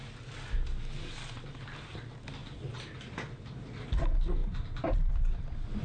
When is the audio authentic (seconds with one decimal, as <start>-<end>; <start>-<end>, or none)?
0.0-5.8